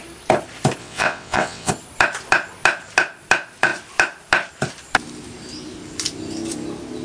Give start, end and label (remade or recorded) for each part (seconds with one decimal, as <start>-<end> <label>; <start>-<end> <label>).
0.0-0.8 recorded; 0.8-1.7 remade; 1.7-7.0 recorded